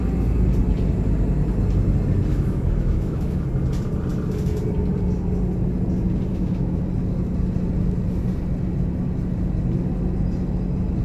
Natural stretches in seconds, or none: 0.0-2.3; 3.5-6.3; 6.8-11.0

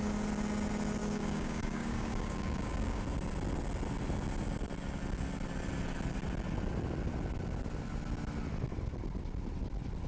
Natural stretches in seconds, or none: 0.0-1.0; 3.0-10.1

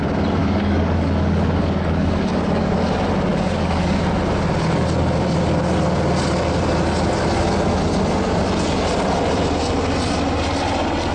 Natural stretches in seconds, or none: 0.0-0.4; 2.9-3.3; 4.0-11.1

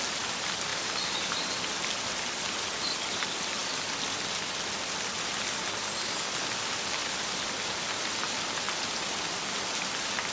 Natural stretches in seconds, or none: 0.0-0.7; 1.5-10.3

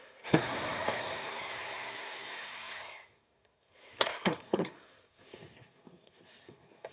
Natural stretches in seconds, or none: none

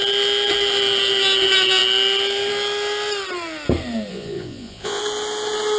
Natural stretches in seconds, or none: 0.0-4.1; 5.0-5.8